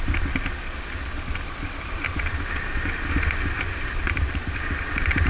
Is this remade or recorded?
recorded